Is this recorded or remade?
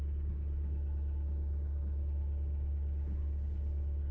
recorded